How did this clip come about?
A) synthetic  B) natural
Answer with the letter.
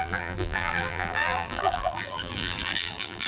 A